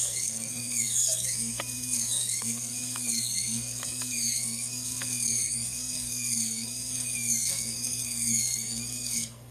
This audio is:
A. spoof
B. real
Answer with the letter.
A